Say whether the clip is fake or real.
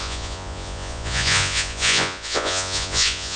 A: fake